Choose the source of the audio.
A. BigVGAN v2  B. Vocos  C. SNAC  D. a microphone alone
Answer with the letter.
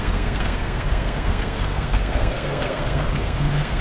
C